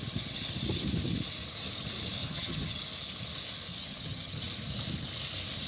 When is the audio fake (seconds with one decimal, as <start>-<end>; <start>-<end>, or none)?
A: 2.2-2.8; 3.8-4.4